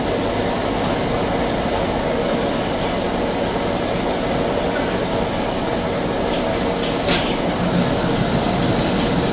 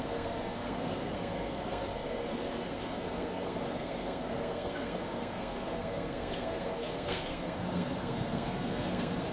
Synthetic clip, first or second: second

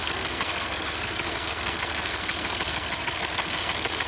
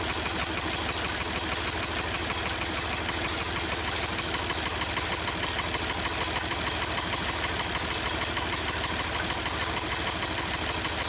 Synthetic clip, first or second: first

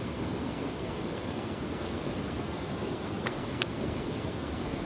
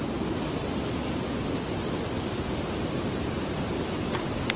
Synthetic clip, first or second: first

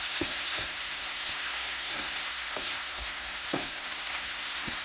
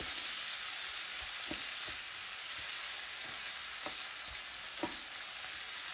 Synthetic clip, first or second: first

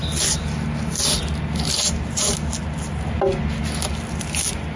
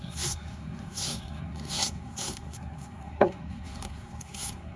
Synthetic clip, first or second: second